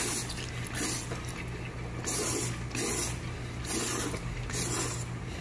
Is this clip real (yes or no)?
yes